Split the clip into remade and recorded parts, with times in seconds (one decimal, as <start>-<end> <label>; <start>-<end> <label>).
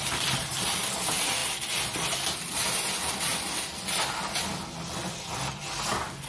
0.0-6.3 recorded